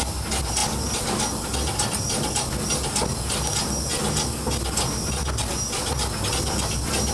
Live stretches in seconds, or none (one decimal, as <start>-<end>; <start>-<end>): 0.0-7.1